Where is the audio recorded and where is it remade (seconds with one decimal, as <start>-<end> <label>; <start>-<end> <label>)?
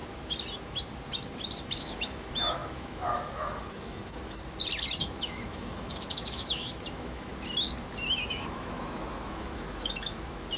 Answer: 0.0-1.8 recorded; 1.8-4.4 remade; 4.4-5.0 recorded; 5.0-7.3 remade; 7.3-8.3 recorded; 8.3-10.6 remade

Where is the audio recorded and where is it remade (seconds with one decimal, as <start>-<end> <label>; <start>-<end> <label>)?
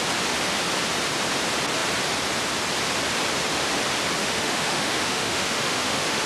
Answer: 0.0-4.2 recorded; 4.2-6.3 remade